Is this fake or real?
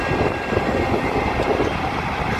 real